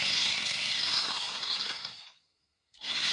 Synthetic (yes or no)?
yes